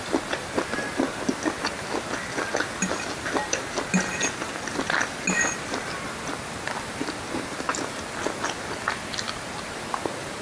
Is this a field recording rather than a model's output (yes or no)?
yes